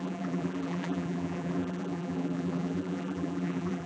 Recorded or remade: remade